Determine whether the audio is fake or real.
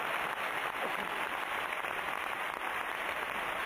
real